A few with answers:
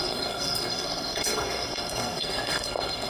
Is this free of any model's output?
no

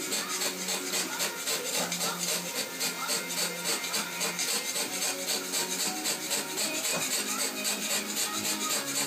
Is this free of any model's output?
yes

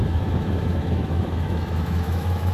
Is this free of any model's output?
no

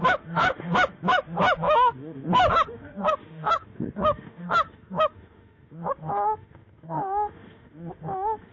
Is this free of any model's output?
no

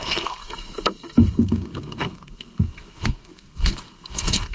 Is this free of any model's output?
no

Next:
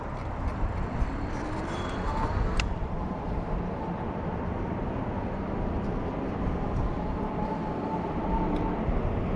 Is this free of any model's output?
no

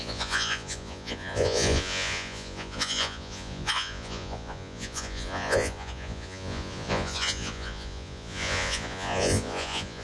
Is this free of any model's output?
no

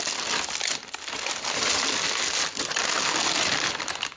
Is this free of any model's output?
yes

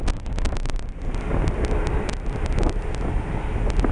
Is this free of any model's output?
yes